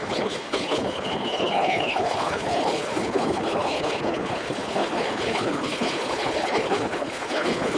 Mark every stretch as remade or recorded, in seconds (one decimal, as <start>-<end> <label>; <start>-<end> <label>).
0.0-7.8 remade